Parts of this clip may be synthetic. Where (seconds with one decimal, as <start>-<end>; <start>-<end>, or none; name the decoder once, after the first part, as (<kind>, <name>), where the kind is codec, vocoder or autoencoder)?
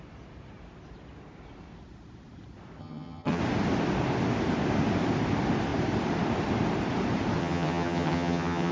2.8-3.4 (vocoder, HiFi-GAN); 7.4-8.7